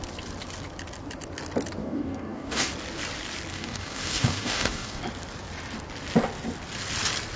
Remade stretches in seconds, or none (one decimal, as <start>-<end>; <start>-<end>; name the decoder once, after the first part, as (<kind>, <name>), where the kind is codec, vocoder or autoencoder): 1.8-2.7 (codec, DAC); 3.5-5.0